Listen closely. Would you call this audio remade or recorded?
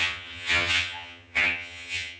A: remade